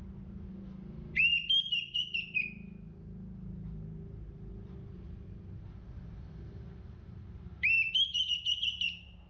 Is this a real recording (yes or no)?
yes